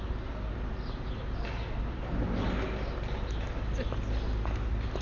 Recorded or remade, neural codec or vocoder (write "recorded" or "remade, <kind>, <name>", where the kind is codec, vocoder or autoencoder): recorded